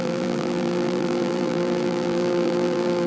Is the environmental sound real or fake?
fake